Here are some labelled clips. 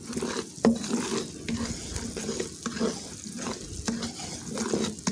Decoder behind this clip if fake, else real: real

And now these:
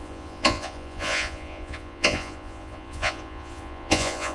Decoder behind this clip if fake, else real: fake, vocoder, Vocos